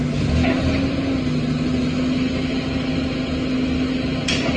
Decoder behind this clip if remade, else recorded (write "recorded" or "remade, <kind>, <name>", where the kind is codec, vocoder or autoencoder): recorded